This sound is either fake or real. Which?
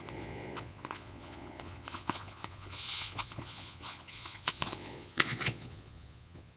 fake